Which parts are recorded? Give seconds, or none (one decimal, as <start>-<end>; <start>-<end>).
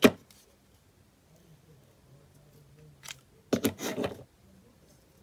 0.0-5.2